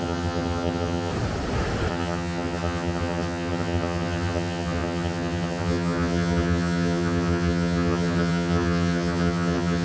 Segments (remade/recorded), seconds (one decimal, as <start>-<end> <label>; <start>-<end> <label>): 0.0-1.1 remade; 1.1-1.9 recorded; 1.9-9.8 remade